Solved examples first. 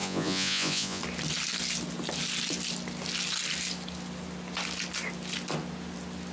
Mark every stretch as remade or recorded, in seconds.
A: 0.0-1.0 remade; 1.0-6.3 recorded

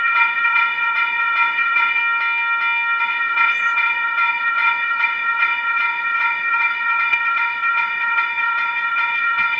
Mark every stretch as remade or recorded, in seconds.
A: 0.0-2.0 remade; 2.0-3.0 recorded; 3.0-9.6 remade

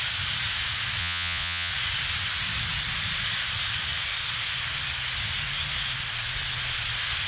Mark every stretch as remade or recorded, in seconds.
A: 0.0-1.0 recorded; 1.0-1.7 remade; 1.7-7.3 recorded

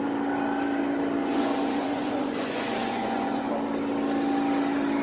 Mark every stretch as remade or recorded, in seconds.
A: 0.0-1.2 recorded; 1.2-3.5 remade; 3.5-5.0 recorded

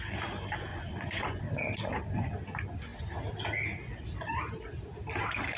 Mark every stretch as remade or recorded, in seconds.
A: 0.0-0.7 recorded; 0.7-1.4 remade; 1.4-5.6 recorded

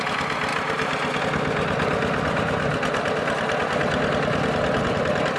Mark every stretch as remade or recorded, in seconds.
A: 0.0-5.4 recorded